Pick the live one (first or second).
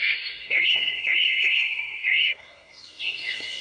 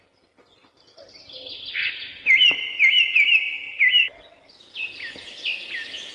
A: second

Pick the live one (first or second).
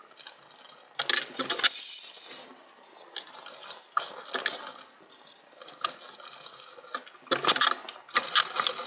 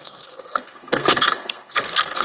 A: first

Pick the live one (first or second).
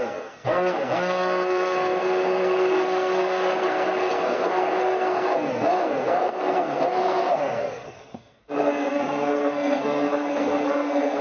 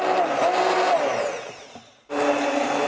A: second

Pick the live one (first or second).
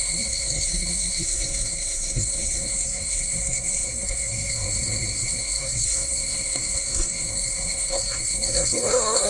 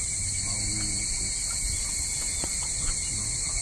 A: second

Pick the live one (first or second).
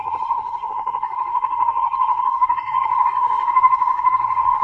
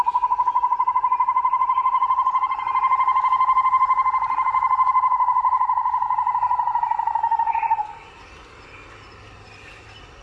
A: second